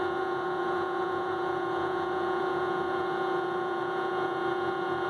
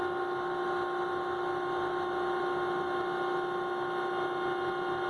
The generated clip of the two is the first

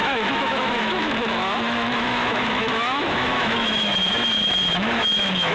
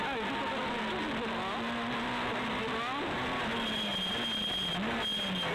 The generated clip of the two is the first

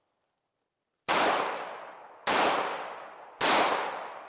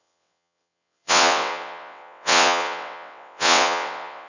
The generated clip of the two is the second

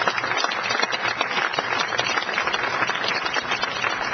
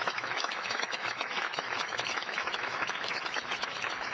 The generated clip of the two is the second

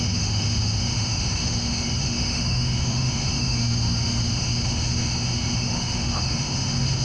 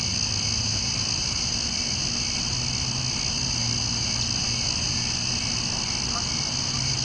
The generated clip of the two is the first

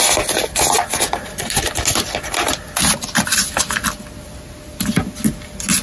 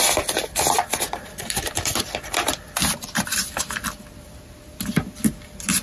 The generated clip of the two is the second